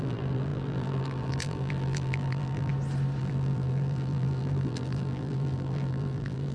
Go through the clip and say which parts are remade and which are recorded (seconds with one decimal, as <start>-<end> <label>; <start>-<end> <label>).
0.0-2.7 remade; 2.7-3.2 recorded; 3.2-6.5 remade